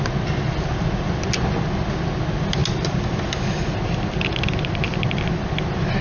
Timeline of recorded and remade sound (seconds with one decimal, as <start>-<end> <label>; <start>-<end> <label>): 0.0-6.0 recorded